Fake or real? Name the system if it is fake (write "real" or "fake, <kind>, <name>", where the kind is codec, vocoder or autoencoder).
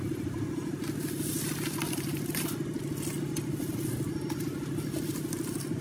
real